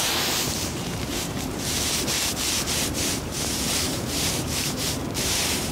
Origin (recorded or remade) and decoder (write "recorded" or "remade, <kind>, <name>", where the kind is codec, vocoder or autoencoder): remade, vocoder, BigVGAN v2